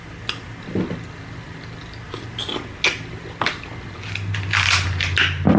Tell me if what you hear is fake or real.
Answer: real